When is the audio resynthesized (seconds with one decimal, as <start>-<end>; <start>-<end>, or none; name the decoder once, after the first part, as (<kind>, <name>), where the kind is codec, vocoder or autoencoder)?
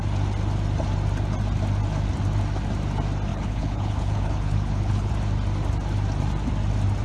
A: 3.3-5.1 (codec, HILCodec)